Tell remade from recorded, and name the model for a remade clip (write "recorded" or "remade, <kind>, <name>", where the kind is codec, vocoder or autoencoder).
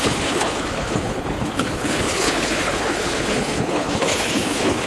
remade, codec, HILCodec